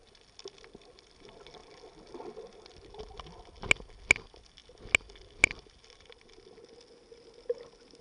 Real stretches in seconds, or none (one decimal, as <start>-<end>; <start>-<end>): 0.0-8.0

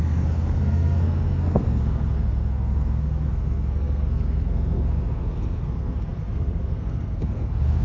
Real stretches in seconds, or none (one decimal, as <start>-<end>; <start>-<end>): none

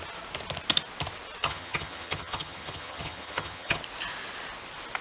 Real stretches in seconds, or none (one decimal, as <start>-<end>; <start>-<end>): 0.0-1.4; 3.8-5.0

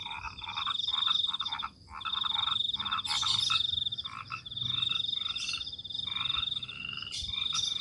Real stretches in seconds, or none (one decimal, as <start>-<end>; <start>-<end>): 0.0-7.8

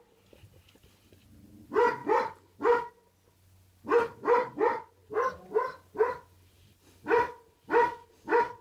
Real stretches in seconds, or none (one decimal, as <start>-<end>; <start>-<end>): 0.0-8.6

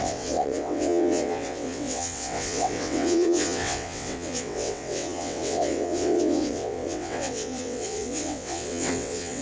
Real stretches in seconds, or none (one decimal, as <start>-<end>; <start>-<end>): none